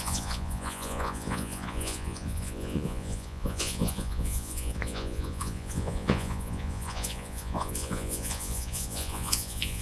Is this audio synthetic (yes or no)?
yes